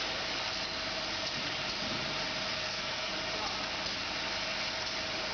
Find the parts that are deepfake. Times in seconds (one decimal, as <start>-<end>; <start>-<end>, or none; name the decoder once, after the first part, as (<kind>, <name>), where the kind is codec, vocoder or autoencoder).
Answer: 2.5-3.1 (codec, SNAC)